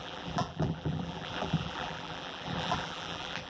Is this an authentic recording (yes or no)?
no